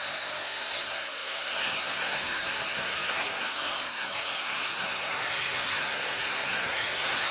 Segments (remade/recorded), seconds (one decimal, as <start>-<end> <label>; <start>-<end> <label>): 0.0-7.3 remade